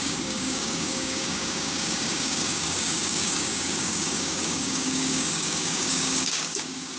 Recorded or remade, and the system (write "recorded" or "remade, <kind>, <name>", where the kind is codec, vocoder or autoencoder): remade, codec, DAC